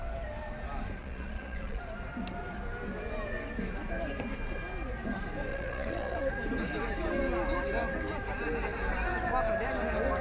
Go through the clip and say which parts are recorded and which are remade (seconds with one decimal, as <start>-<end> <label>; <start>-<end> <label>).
0.0-1.0 recorded; 1.0-1.8 remade; 1.8-5.5 recorded; 5.5-6.2 remade; 6.2-10.2 recorded